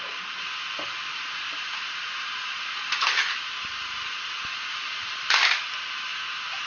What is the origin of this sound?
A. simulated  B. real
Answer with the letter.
A